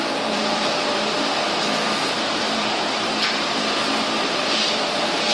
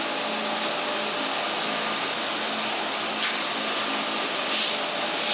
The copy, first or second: first